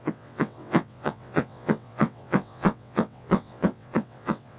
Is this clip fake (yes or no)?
yes